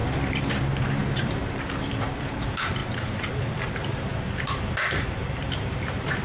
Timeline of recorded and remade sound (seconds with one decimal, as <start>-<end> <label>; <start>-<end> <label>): 0.0-6.2 remade